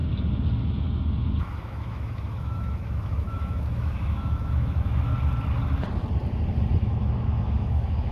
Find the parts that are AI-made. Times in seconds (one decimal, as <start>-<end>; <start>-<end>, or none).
1.4-5.1; 6.8-8.1